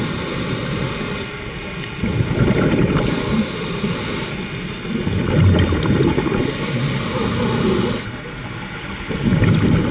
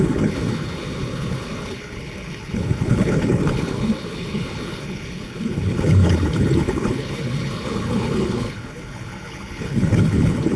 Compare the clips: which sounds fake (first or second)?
second